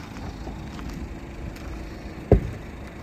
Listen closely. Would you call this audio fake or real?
real